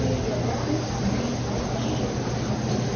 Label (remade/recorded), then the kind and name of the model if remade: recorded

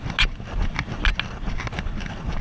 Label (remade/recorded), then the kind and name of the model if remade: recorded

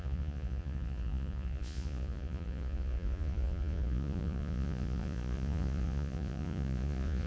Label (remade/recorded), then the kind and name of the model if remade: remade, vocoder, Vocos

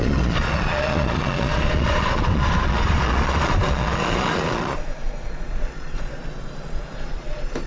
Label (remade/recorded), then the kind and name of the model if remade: remade, vocoder, Vocos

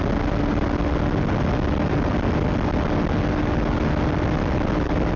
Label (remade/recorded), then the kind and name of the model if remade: recorded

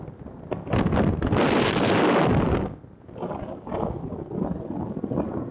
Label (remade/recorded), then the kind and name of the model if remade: recorded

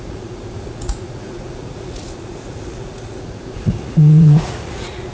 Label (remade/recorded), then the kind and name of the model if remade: remade, vocoder, Vocos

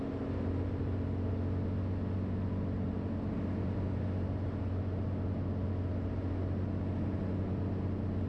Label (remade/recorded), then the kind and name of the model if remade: recorded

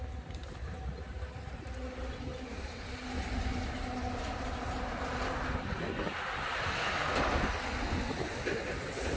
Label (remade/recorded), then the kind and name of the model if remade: recorded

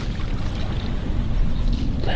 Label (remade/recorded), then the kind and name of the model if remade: recorded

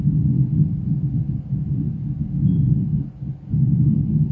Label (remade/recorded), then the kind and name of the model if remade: recorded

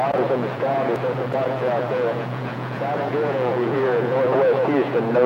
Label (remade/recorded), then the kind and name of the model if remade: remade, vocoder, Vocos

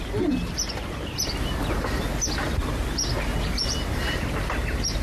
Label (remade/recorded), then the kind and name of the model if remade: recorded